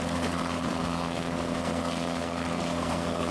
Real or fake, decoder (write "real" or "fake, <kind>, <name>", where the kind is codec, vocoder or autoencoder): fake, codec, SNAC